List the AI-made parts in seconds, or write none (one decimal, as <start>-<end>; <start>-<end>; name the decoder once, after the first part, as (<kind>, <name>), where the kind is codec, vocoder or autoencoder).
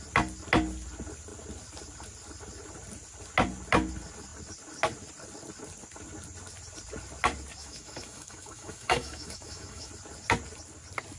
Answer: 7.6-9.9 (autoencoder, DAC-VAE)